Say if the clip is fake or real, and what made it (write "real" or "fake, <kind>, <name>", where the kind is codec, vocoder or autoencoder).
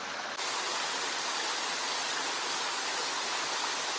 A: real